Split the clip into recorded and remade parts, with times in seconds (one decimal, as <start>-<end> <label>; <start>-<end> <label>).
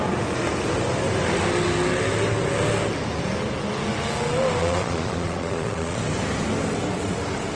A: 0.0-4.6 recorded; 4.6-6.0 remade; 6.0-7.6 recorded